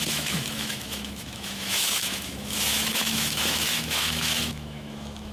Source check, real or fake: fake